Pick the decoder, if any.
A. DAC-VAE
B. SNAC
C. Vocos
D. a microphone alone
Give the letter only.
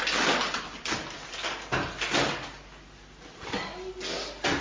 D